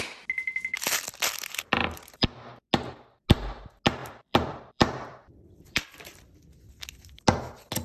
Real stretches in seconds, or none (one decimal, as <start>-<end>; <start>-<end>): 0.0-1.8; 2.4-4.0; 6.2-7.8